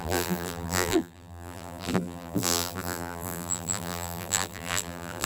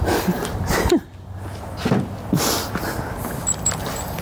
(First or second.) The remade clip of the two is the first